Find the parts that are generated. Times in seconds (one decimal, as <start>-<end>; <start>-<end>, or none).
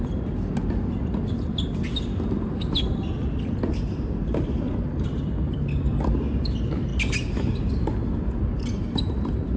none